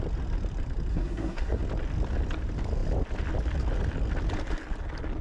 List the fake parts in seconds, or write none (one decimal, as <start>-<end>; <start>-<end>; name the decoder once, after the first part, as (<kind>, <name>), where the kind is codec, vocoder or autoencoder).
0.9-1.6 (codec, SNAC)